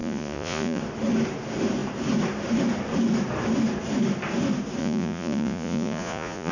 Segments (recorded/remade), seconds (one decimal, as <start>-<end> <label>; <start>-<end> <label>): 0.0-0.8 remade; 0.8-4.8 recorded; 4.8-6.5 remade